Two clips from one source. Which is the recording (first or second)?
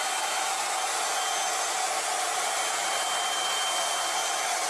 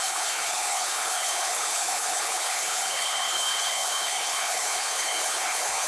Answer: first